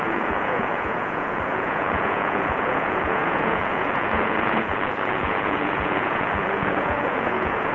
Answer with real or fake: fake